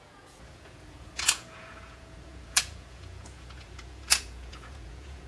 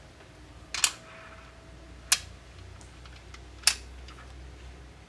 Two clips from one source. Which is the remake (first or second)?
first